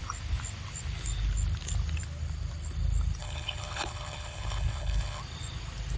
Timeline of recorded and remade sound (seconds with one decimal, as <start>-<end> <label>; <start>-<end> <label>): 0.0-3.2 recorded; 3.2-5.2 remade; 5.2-6.0 recorded